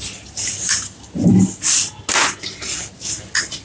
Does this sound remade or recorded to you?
recorded